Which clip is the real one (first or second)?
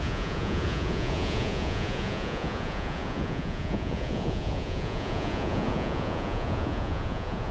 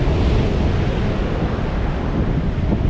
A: second